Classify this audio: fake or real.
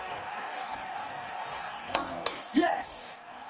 fake